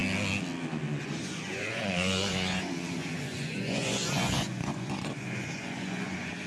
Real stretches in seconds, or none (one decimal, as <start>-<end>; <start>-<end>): 0.0-1.0